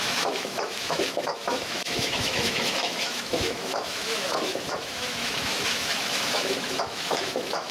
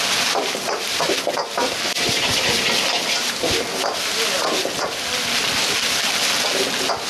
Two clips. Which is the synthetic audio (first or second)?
first